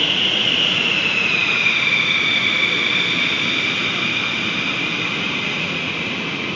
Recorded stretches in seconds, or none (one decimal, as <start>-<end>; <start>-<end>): 2.6-5.1